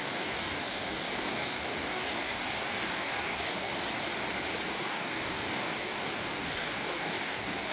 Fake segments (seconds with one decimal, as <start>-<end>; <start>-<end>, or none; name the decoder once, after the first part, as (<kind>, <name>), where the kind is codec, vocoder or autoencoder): 0.0-3.7 (codec, DAC); 4.7-7.7